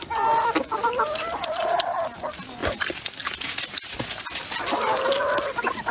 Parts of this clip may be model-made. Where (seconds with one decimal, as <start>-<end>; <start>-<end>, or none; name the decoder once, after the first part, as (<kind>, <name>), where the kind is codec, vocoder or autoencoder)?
none

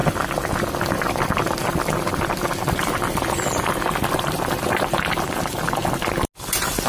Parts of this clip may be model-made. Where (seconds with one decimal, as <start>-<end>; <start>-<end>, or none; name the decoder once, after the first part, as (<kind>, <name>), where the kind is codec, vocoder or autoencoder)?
none

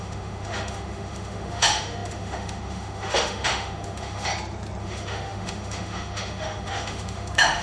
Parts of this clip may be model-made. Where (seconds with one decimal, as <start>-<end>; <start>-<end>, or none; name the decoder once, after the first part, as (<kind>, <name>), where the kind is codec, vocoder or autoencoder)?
0.0-4.3 (autoencoder, DAC-VAE); 4.8-7.6

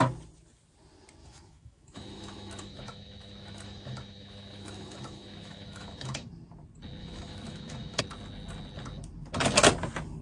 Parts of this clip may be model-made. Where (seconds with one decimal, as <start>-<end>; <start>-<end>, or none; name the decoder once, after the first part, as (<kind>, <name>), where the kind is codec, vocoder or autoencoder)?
1.2-6.3 (autoencoder, DAC-VAE); 7.0-8.0

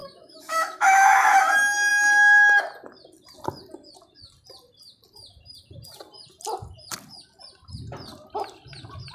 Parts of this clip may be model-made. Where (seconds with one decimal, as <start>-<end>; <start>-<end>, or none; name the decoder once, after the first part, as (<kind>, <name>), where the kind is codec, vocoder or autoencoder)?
0.0-1.3 (autoencoder, DAC-VAE)

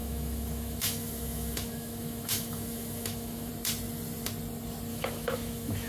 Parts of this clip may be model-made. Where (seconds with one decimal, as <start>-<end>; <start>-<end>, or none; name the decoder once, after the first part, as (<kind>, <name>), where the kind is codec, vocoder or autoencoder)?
0.0-3.5 (autoencoder, DAC-VAE); 4.9-5.9

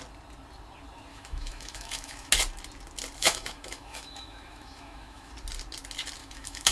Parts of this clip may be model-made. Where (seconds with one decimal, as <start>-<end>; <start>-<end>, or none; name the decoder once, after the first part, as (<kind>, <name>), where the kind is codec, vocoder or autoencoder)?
1.1-2.3 (autoencoder, DAC-VAE); 3.2-5.3; 6.2-6.7

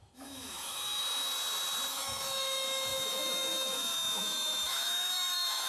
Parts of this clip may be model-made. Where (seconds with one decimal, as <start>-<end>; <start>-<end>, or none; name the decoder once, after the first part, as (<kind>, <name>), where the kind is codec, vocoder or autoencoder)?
0.0-1.0 (autoencoder, DAC-VAE); 1.9-5.7